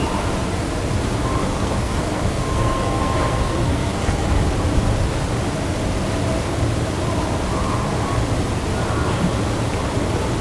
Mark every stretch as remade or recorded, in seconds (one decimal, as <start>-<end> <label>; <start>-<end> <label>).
0.0-1.4 recorded; 1.4-4.2 remade; 4.2-10.4 recorded